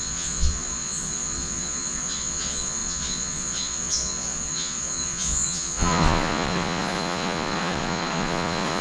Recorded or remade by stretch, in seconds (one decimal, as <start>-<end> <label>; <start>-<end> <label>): 0.0-8.8 remade